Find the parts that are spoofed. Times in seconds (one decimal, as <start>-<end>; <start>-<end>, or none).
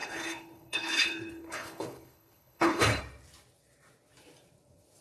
0.0-3.0